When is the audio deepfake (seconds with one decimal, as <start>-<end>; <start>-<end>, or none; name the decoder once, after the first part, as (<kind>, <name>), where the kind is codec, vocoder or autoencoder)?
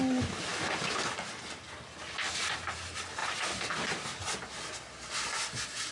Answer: 3.2-3.7 (vocoder, BigVGAN v2)